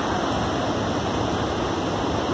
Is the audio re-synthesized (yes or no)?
no